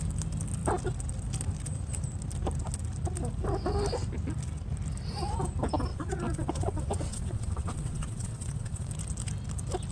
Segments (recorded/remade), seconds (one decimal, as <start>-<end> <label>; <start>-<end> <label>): 0.0-5.9 recorded; 5.9-8.9 remade; 8.9-9.9 recorded